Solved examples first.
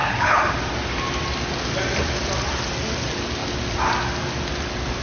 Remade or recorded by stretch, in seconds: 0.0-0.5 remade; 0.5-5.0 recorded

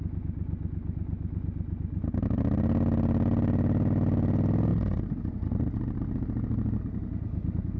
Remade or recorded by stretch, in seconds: 0.0-7.8 recorded

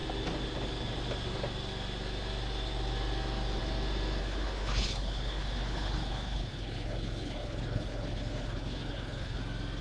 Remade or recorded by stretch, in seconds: 0.0-4.2 recorded; 4.2-9.4 remade; 9.4-9.8 recorded

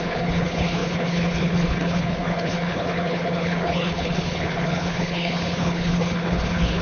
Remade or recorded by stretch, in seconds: 0.0-6.8 remade

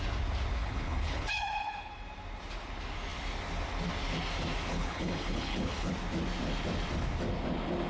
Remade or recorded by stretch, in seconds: 0.0-0.6 recorded; 0.6-1.9 remade; 1.9-4.7 recorded; 4.7-5.9 remade; 5.9-7.9 recorded